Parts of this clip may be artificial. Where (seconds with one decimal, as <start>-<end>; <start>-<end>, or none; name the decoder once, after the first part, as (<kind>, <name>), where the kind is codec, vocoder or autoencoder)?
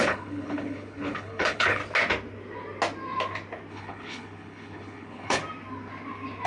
0.0-1.8 (codec, HILCodec); 3.7-5.4